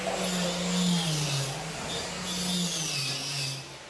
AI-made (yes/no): no